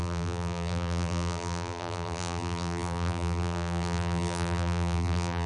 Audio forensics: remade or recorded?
remade